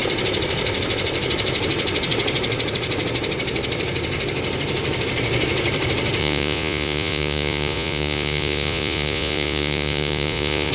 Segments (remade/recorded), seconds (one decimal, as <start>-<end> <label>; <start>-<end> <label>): 0.0-6.2 recorded; 6.2-10.7 remade